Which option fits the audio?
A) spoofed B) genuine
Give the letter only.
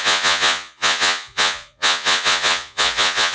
A